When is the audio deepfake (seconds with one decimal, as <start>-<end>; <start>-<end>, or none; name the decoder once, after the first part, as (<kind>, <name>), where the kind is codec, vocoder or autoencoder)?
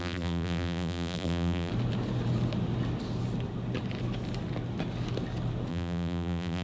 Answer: 0.0-1.7 (vocoder, BigVGAN v2); 5.7-6.6